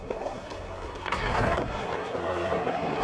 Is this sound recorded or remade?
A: remade